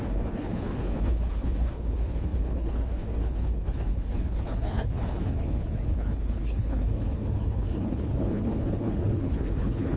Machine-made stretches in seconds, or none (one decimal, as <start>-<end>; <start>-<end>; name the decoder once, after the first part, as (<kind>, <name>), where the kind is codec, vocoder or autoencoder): 0.0-10.0 (codec, HILCodec)